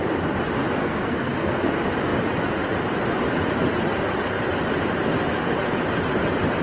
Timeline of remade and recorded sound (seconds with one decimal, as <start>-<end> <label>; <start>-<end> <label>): 0.0-0.8 recorded; 0.8-1.7 remade; 1.7-6.6 recorded